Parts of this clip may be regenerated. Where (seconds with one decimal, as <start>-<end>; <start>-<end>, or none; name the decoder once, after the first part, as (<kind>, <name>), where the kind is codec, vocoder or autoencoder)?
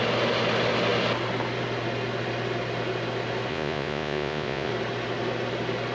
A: 3.5-4.7 (vocoder, Vocos)